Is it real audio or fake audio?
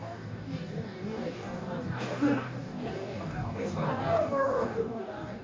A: fake